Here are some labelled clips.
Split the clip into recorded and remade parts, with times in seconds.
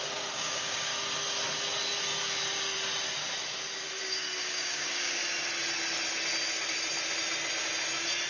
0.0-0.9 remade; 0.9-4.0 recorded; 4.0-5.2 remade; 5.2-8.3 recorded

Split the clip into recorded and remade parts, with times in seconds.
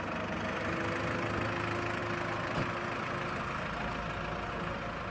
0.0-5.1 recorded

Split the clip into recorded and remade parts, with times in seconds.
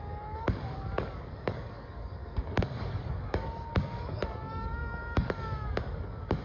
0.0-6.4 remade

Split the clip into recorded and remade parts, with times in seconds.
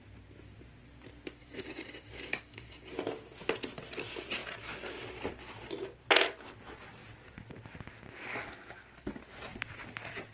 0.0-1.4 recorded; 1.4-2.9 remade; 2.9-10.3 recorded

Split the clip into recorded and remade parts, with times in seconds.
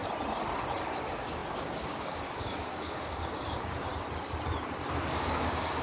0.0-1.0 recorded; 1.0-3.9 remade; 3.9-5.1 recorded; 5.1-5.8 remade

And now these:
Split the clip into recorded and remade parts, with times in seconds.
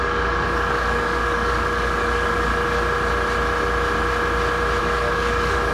0.0-2.5 remade; 2.5-4.8 recorded; 4.8-5.7 remade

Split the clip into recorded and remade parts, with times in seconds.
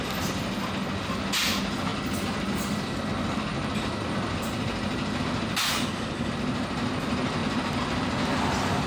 0.0-5.7 recorded; 5.7-6.3 remade; 6.3-8.9 recorded